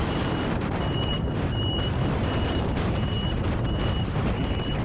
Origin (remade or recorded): remade